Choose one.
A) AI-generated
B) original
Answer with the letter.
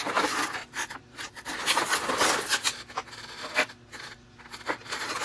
B